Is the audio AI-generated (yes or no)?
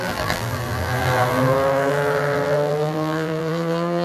yes